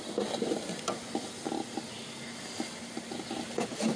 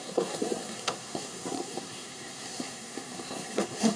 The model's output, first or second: second